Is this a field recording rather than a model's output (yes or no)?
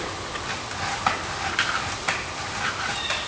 no